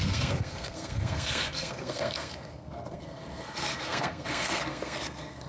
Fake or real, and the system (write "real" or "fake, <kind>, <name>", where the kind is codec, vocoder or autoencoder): fake, codec, SNAC